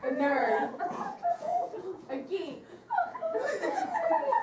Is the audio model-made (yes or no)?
yes